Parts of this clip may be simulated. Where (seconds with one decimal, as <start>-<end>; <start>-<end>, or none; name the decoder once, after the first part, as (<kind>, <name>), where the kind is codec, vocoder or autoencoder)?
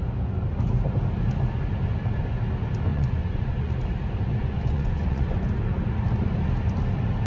2.9-3.7 (vocoder, Vocos); 4.4-5.4